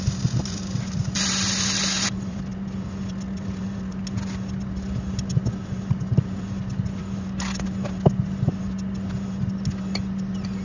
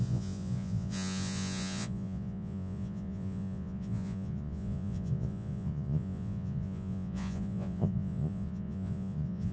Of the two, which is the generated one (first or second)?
second